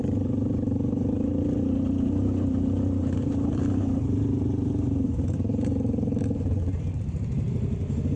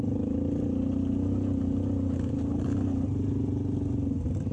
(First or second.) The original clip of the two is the second